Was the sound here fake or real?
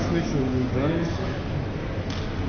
real